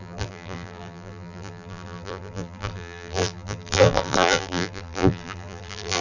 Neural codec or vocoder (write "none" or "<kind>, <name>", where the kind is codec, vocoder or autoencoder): vocoder, BigVGAN v2